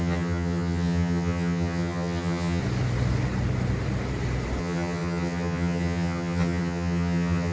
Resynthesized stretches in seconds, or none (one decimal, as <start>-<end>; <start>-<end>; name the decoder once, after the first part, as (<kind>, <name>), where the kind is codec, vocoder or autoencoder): 0.0-2.6 (vocoder, HiFi-GAN); 4.6-7.5